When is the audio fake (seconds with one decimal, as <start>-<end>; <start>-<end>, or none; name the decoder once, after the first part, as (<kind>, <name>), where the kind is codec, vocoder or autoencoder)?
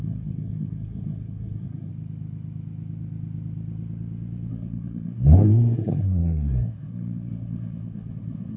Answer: 0.0-1.9 (codec, SNAC); 4.5-8.6